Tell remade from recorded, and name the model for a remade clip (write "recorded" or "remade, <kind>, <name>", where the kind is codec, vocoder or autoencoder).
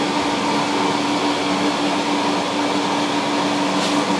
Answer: recorded